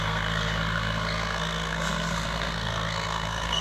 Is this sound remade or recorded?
remade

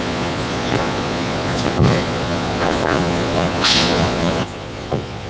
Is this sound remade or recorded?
remade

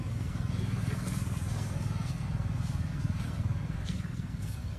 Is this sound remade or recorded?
remade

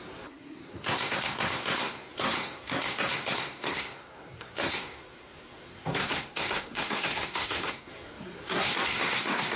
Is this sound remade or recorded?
remade